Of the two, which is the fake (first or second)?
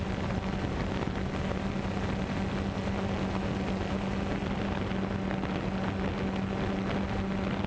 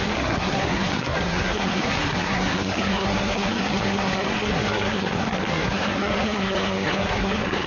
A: second